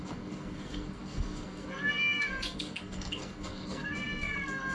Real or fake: fake